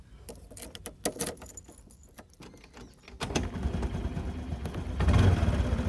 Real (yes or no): yes